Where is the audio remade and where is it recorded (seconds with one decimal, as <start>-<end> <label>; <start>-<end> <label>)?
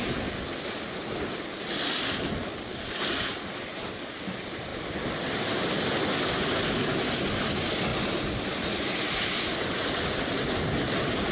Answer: 0.0-11.3 recorded